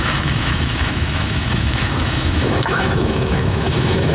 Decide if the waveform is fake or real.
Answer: fake